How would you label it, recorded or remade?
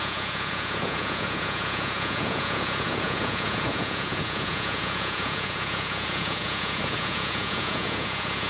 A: remade